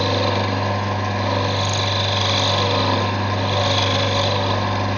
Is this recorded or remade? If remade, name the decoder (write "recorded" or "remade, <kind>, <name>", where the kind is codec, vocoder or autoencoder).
recorded